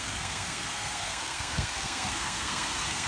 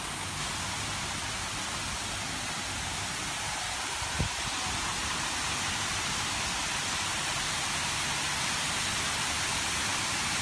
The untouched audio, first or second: second